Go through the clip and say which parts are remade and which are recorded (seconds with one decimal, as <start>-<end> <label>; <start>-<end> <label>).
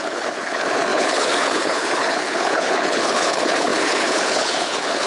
0.0-5.1 remade